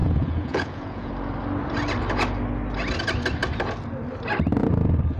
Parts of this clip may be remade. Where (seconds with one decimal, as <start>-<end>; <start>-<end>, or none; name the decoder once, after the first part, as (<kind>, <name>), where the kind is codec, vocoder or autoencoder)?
0.0-1.1 (vocoder, Vocos)